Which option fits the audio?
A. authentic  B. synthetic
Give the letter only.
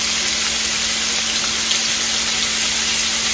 A